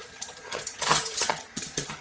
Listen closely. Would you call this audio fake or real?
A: fake